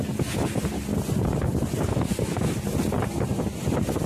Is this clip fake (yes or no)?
no